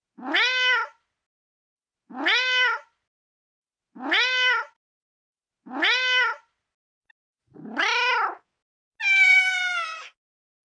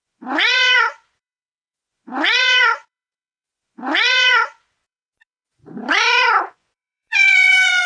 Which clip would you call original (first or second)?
first